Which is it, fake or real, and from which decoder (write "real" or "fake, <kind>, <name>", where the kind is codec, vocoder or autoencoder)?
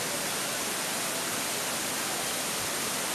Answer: real